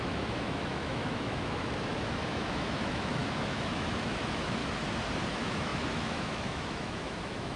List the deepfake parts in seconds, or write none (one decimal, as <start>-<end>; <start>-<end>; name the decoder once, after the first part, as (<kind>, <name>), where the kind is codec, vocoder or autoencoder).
0.0-4.6 (autoencoder, DAC-VAE); 5.3-7.6